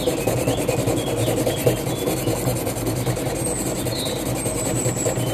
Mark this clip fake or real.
real